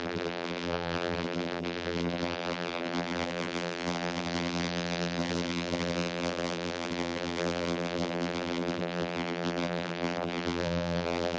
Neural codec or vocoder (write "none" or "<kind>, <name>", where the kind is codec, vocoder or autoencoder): vocoder, BigVGAN v2